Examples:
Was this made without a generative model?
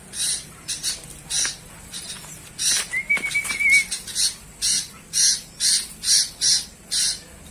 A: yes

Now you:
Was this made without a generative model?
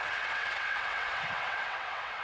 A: no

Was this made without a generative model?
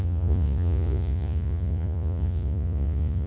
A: no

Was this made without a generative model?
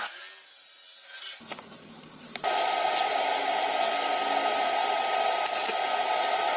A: yes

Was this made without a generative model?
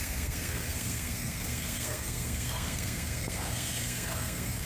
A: no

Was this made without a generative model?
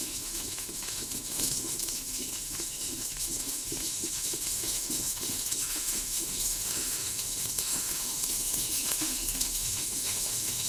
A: no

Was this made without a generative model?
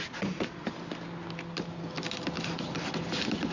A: yes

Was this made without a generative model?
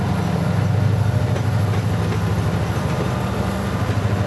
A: yes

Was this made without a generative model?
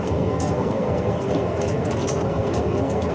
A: no